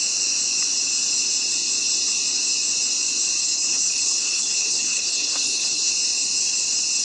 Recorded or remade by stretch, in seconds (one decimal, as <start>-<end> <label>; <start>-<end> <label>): 0.0-3.4 recorded; 3.4-5.9 remade; 5.9-7.0 recorded